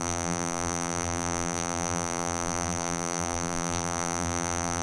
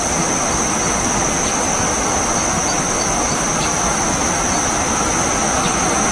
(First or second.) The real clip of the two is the second